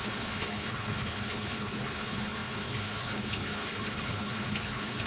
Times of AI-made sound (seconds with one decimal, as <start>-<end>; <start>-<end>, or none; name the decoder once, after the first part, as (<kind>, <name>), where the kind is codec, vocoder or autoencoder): 0.0-5.1 (codec, HILCodec)